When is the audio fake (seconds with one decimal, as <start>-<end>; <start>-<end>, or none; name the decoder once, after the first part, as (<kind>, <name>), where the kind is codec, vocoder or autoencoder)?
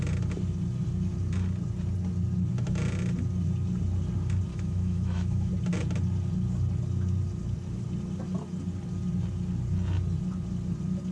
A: 4.5-5.5 (autoencoder, DAC-VAE)